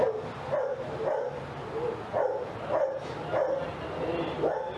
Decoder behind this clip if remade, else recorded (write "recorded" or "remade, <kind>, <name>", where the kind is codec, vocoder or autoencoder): recorded